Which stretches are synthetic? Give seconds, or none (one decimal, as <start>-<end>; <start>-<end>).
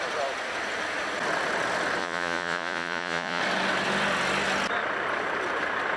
2.0-3.4